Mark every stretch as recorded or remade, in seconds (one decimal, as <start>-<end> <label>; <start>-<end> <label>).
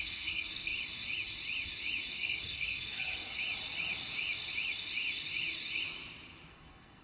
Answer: 0.0-0.7 remade; 0.7-2.1 recorded; 2.1-3.4 remade; 3.4-6.5 recorded; 6.5-7.0 remade